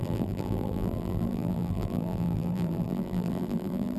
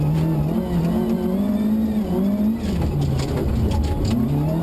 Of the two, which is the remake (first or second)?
first